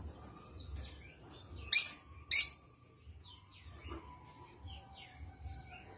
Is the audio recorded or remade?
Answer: recorded